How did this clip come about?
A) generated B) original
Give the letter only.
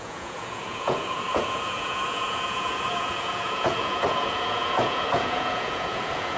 A